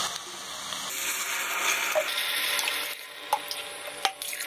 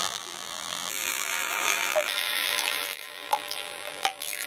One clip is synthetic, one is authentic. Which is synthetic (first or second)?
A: second